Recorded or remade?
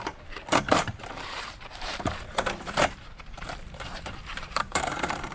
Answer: remade